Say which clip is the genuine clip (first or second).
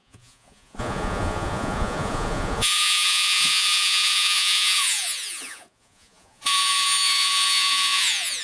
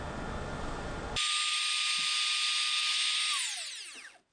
second